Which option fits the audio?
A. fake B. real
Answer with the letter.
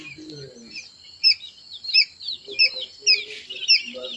B